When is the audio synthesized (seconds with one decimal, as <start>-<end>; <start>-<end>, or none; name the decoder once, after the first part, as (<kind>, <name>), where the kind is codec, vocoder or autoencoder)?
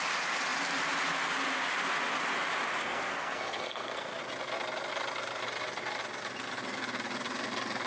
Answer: 2.8-4.2 (codec, SNAC)